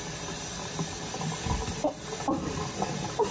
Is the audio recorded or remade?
recorded